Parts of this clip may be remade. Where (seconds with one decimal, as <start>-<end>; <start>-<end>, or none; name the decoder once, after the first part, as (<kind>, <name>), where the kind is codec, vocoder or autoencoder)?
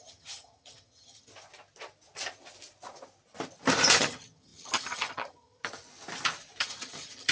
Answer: 0.0-1.3 (vocoder, HiFi-GAN); 4.0-5.6; 6.6-7.3